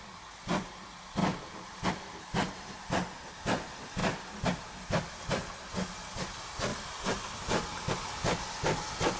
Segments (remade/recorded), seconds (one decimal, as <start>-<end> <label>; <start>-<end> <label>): 0.0-1.2 recorded; 1.2-1.9 remade; 1.9-6.7 recorded; 6.7-7.9 remade; 7.9-9.2 recorded